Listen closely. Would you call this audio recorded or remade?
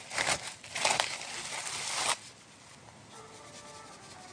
recorded